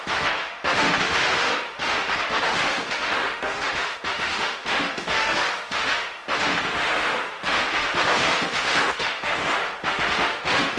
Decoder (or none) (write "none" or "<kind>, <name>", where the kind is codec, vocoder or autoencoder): autoencoder, DAC-VAE